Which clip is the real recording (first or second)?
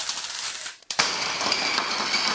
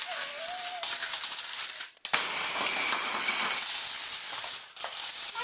second